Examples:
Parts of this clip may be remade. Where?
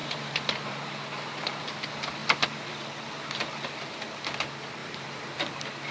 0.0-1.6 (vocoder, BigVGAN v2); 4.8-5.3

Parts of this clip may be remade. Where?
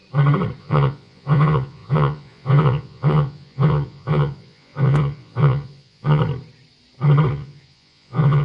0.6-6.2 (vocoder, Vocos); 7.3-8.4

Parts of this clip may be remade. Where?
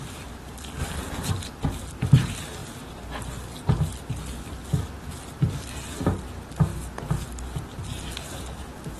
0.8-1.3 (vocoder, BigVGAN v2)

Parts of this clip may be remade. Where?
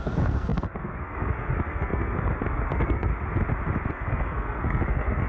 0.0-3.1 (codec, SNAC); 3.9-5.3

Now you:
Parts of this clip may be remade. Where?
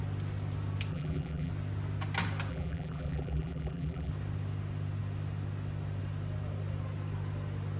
0.9-1.5 (vocoder, BigVGAN v2); 2.5-4.1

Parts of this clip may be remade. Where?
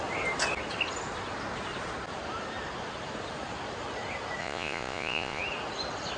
4.4-5.4 (vocoder, Vocos)